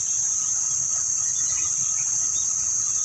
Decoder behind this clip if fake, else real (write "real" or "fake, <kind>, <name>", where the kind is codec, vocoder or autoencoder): real